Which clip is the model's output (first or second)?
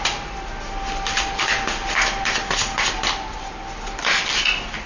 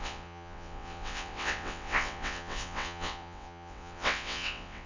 second